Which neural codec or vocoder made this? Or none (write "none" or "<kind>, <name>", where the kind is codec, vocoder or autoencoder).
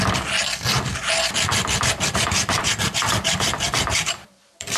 vocoder, BigVGAN v2